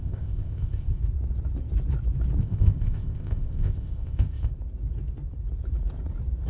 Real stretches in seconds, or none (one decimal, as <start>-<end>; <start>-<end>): 1.0-2.4; 4.5-6.5